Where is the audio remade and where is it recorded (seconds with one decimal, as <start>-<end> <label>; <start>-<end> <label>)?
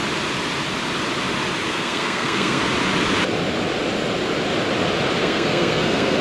0.0-1.7 recorded; 1.7-2.6 remade; 2.6-5.2 recorded; 5.2-6.2 remade